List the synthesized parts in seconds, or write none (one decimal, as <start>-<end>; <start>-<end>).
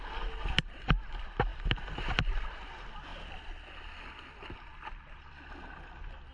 none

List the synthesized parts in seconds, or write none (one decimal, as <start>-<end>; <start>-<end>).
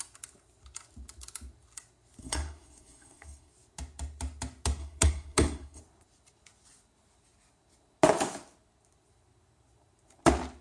2.2-3.5; 4.8-5.8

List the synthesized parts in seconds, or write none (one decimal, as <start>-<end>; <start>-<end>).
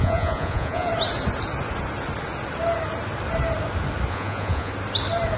0.0-0.9; 4.1-4.7